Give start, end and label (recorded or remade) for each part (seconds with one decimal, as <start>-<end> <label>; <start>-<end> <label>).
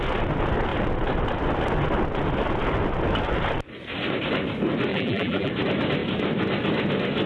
0.0-4.9 recorded; 4.9-5.5 remade; 5.5-7.3 recorded